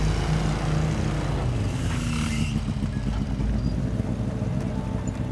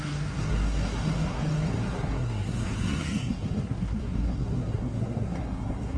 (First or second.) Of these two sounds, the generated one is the second